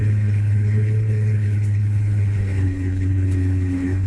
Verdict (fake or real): fake